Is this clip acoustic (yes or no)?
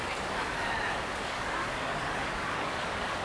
no